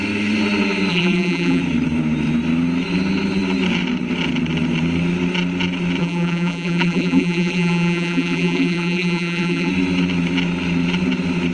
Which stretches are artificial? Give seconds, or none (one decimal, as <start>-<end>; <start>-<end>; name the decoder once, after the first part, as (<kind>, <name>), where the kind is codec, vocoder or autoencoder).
0.9-1.6 (vocoder, BigVGAN v2); 6.0-9.7